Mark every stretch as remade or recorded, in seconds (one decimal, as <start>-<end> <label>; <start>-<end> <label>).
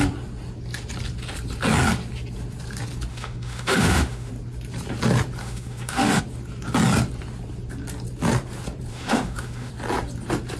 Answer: 0.0-3.1 recorded; 3.1-4.3 remade; 4.3-5.4 recorded; 5.4-6.2 remade; 6.2-8.9 recorded; 8.9-9.7 remade; 9.7-10.6 recorded